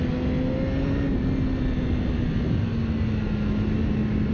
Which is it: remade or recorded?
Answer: recorded